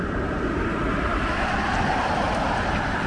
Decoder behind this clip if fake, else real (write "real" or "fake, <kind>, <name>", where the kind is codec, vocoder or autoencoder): fake, vocoder, BigVGAN v2